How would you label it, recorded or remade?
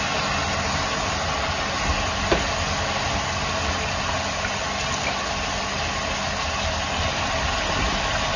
recorded